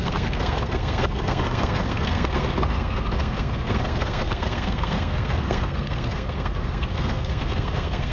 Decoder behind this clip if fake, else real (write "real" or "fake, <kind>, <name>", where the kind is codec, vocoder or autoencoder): fake, codec, SNAC